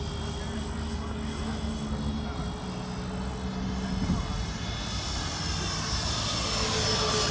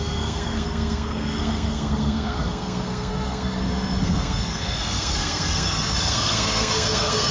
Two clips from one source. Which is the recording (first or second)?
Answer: first